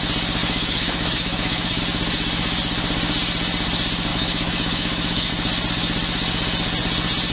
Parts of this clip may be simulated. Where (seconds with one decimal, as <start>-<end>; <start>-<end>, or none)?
0.4-1.8; 4.1-5.3